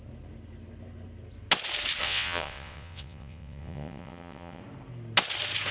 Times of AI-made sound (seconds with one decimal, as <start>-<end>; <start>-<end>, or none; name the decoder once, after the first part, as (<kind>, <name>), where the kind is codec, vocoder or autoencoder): 2.0-4.6 (vocoder, WaveNeXt)